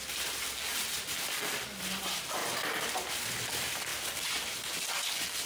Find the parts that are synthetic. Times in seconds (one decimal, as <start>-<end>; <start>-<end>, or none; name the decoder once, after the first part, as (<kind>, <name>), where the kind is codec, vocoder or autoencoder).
2.4-3.4 (vocoder, BigVGAN v2)